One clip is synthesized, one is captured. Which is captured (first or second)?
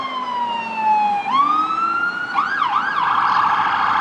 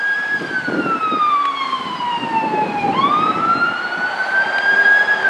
first